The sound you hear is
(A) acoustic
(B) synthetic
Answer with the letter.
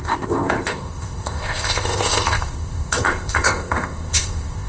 B